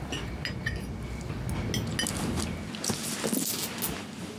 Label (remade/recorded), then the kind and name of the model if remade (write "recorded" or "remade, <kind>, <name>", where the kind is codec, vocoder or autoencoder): recorded